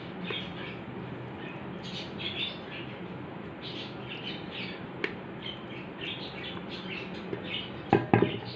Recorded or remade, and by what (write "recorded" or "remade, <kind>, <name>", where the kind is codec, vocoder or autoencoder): recorded